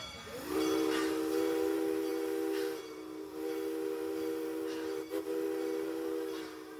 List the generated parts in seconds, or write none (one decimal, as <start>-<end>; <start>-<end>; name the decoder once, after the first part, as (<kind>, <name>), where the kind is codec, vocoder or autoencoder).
none

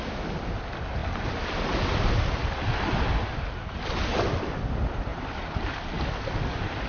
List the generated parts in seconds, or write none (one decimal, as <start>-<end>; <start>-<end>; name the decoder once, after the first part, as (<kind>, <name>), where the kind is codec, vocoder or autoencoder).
none

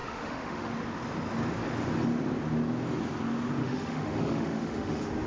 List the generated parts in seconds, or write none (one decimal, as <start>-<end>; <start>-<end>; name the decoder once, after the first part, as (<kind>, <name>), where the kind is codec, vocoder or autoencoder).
0.0-0.7 (autoencoder, DAC-VAE); 3.6-5.3

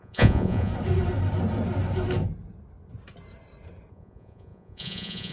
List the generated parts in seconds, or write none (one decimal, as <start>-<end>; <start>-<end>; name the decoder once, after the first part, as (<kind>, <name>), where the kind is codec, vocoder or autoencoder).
0.0-0.7 (vocoder, Vocos); 3.9-5.3